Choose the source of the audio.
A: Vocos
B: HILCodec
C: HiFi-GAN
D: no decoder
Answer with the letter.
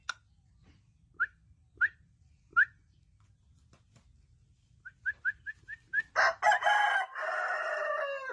D